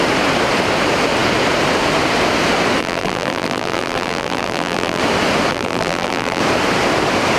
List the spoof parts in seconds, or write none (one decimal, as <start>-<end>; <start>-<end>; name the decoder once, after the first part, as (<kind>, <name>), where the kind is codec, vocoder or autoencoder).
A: 2.8-5.0 (vocoder, BigVGAN v2); 5.5-6.4